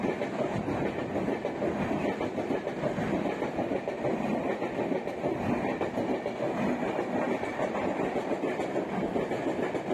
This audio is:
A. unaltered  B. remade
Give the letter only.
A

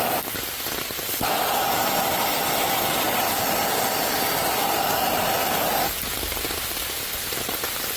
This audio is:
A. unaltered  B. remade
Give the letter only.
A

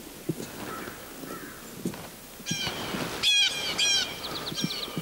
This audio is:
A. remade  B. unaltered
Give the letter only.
B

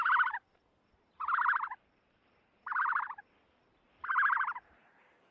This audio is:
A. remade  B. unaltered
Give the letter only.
A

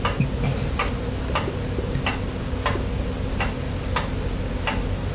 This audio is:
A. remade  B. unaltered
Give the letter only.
A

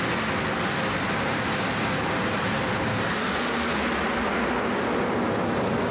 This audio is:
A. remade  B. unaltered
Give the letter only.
B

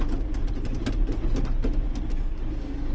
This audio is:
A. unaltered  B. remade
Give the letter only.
A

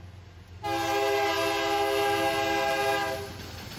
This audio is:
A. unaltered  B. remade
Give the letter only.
A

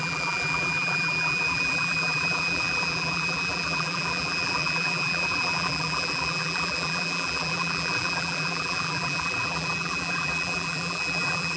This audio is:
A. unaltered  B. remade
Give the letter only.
B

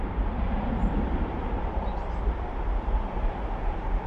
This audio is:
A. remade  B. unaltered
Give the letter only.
A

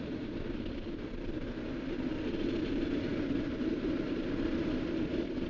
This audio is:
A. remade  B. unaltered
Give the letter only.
A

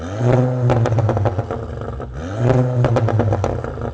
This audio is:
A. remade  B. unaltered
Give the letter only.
B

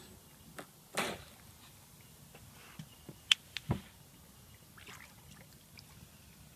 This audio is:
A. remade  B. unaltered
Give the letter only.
B